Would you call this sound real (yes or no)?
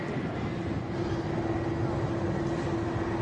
yes